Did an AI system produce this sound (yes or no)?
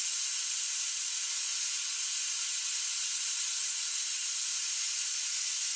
no